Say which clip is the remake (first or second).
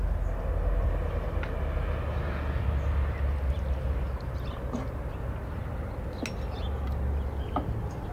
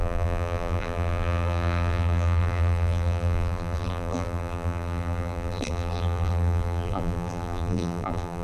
second